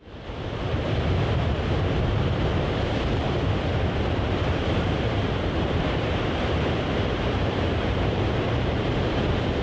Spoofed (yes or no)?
yes